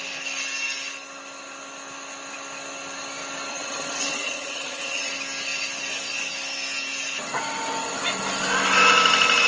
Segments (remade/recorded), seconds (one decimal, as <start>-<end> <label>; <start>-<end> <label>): 0.0-3.5 recorded; 3.5-5.1 remade; 5.1-9.5 recorded